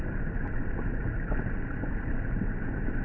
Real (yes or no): yes